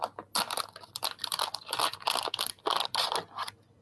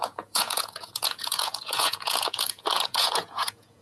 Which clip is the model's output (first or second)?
second